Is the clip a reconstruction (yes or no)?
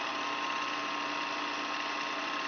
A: no